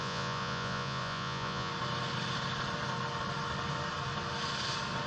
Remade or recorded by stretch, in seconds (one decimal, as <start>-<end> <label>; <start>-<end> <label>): 0.0-1.7 remade; 1.7-5.1 recorded